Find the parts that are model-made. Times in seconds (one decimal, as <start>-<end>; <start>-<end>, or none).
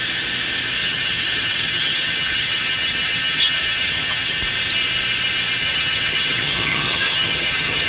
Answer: 0.8-4.4; 5.6-7.9